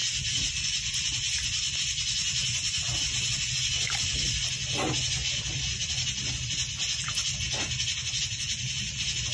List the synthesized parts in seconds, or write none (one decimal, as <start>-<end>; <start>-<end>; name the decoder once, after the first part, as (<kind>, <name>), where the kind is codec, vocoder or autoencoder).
none